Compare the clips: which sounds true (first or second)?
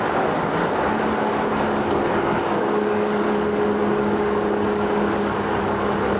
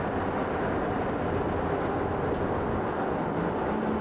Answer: second